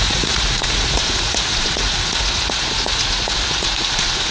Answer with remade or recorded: remade